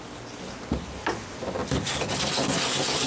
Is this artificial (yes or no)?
no